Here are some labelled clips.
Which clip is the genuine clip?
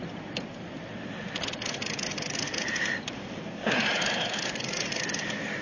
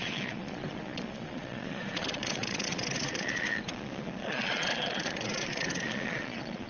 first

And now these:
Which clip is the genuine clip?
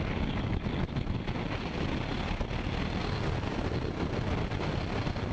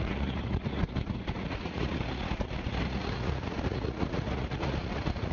first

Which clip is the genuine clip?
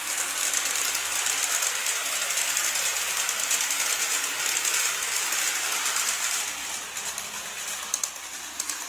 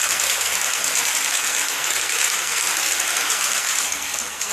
first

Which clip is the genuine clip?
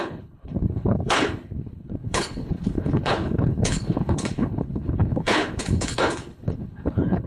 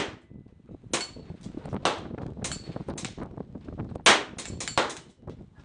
second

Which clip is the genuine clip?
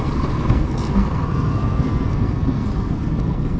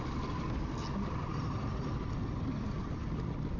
second